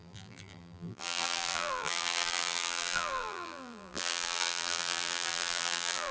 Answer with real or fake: fake